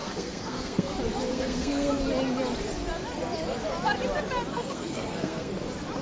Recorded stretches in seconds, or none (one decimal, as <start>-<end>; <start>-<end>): 0.9-1.3; 1.9-4.5; 5.5-6.0